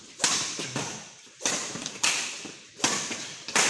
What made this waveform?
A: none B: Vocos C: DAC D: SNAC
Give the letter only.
A